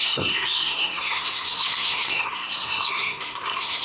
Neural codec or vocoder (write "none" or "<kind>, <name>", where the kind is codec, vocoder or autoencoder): codec, SNAC